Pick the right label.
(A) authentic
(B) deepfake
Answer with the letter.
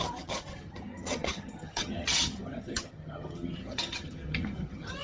B